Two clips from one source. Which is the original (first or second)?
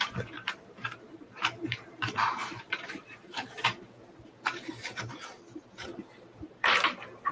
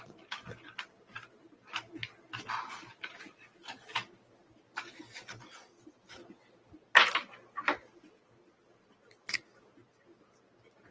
second